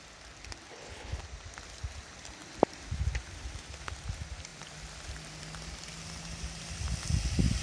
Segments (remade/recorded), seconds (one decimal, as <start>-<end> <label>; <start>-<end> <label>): 0.0-0.7 recorded; 0.7-1.2 remade; 1.2-7.6 recorded

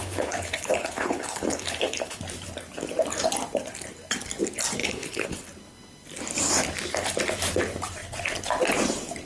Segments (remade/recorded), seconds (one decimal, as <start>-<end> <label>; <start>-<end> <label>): 0.0-2.2 remade; 2.2-4.8 recorded; 4.8-5.5 remade; 5.5-9.3 recorded